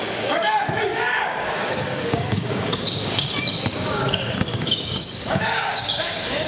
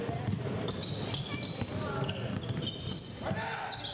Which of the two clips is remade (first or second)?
first